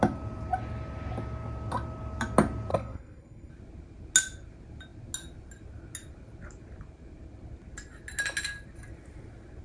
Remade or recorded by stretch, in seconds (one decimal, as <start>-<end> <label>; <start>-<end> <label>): 0.0-2.7 recorded; 2.7-3.5 remade; 3.5-9.6 recorded